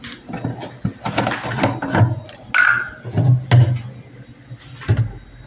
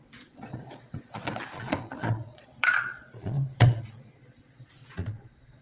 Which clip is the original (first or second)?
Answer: first